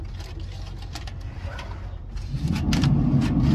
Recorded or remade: recorded